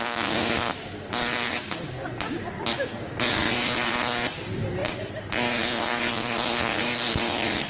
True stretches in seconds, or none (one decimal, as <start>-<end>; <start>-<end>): 0.0-7.7